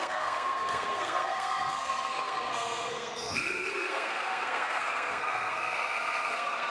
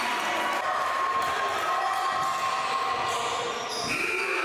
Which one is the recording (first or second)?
second